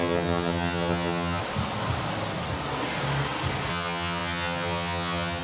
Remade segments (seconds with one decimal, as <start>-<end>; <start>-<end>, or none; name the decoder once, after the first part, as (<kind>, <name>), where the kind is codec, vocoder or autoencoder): 0.0-1.4 (vocoder, HiFi-GAN); 3.7-5.4